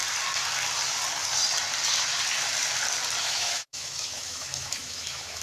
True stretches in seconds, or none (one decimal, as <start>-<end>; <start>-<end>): 0.0-3.2